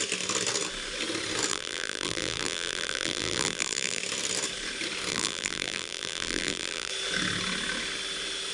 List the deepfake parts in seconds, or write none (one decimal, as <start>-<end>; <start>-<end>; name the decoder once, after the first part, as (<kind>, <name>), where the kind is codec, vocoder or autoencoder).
1.5-4.0 (vocoder, BigVGAN v2); 5.1-6.9